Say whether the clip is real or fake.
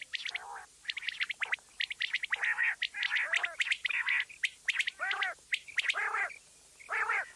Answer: real